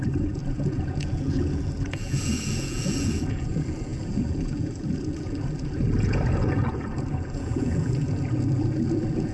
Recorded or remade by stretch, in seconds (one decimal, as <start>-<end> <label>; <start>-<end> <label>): 0.0-9.3 remade